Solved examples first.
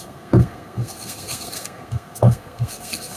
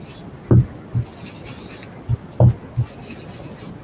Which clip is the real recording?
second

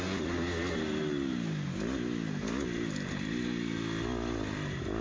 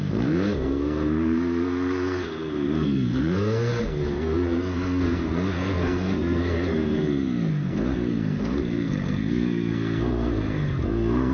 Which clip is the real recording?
first